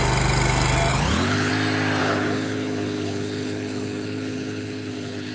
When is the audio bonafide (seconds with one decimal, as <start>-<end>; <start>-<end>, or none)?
0.0-0.9; 1.5-2.0